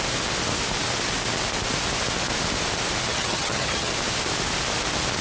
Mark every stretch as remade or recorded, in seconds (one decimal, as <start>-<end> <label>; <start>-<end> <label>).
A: 0.0-3.1 recorded; 3.1-3.9 remade; 3.9-5.2 recorded

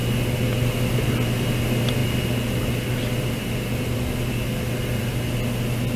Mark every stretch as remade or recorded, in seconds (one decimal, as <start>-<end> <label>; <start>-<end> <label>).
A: 0.0-6.0 recorded

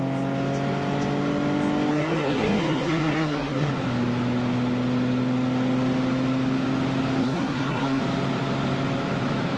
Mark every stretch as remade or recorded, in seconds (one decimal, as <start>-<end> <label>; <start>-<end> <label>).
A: 0.0-1.9 recorded; 1.9-3.7 remade; 3.7-7.2 recorded; 7.2-8.0 remade; 8.0-9.6 recorded

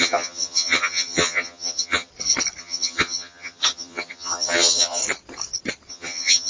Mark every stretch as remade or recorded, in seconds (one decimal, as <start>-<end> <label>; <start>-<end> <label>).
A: 0.0-2.1 remade; 2.1-2.6 recorded; 2.6-5.0 remade; 5.0-5.9 recorded; 5.9-6.5 remade